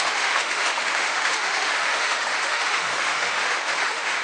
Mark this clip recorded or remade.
remade